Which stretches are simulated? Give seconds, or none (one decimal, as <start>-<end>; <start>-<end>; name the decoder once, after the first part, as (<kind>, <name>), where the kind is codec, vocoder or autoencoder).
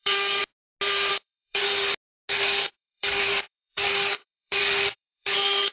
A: 0.0-0.4 (codec, DAC); 1.1-1.7; 2.3-5.7